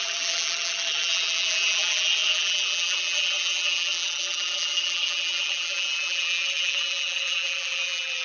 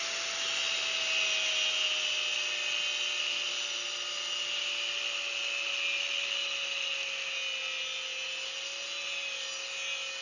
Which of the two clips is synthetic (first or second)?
first